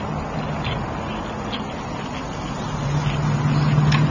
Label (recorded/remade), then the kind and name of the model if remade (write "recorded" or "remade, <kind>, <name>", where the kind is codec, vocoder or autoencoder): recorded